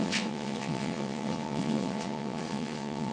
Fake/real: fake